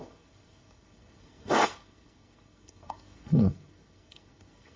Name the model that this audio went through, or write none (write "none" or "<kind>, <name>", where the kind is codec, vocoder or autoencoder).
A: codec, SNAC